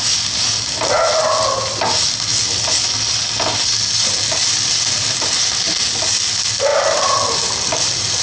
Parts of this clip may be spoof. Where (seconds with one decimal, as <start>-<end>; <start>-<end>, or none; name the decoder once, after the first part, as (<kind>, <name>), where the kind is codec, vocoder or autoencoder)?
none